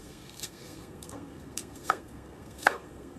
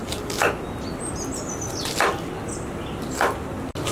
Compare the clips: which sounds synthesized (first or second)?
first